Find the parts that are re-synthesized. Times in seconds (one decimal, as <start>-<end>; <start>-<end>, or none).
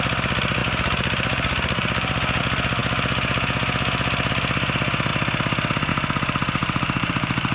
0.6-2.4; 6.6-7.1